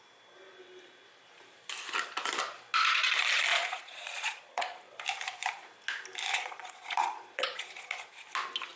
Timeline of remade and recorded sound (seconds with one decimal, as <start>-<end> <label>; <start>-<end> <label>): 0.0-3.5 recorded; 3.5-5.0 remade; 5.0-6.3 recorded; 6.3-8.1 remade; 8.1-8.8 recorded